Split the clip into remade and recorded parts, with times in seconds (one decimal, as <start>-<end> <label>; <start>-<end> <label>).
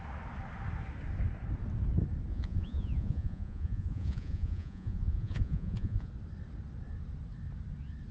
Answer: 0.0-2.3 recorded; 2.3-6.1 remade; 6.1-8.1 recorded